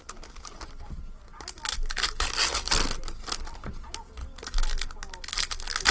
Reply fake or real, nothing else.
real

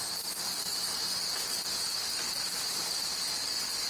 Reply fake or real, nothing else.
real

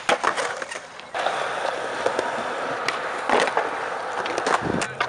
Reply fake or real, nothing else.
fake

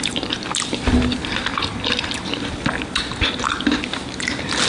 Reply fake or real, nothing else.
fake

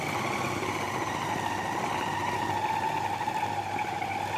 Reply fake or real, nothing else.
real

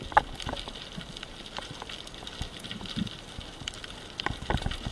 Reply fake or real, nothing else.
fake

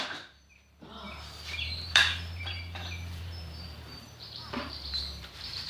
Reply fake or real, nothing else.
fake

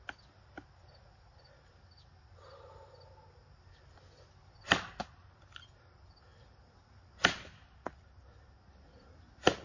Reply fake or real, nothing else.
real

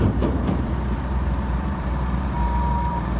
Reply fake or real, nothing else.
fake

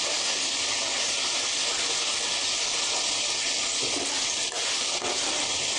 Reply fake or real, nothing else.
real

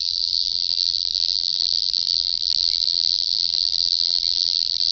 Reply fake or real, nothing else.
fake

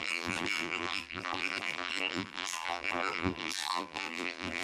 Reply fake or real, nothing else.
fake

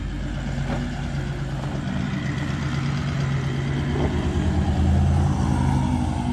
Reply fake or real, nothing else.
real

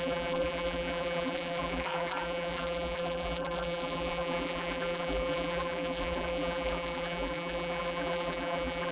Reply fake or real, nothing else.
fake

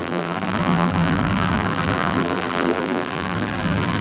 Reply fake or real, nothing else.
fake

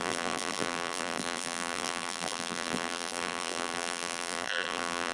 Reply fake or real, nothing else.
fake